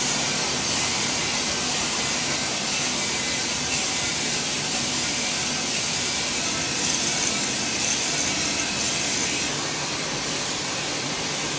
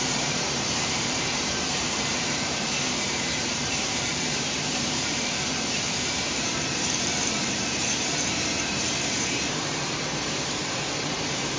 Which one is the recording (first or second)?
first